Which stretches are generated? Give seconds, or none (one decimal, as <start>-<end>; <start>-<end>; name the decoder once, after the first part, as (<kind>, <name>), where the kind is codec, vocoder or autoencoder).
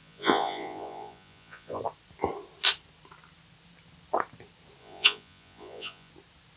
0.0-1.8 (vocoder, Vocos); 4.8-6.1